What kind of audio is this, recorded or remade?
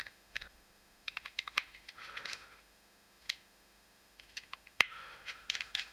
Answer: remade